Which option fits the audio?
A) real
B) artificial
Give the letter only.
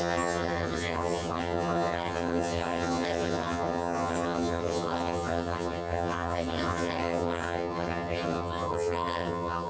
B